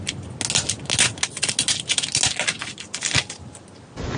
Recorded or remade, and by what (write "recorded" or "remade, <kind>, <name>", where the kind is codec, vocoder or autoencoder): recorded